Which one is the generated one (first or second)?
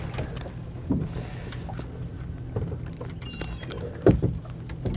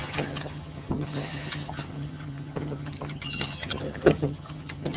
second